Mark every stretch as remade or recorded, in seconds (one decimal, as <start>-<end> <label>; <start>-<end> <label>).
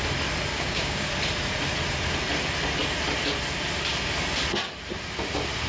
0.0-0.5 recorded; 0.5-1.1 remade; 1.1-5.7 recorded